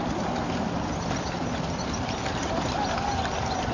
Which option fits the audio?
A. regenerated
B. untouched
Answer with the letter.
B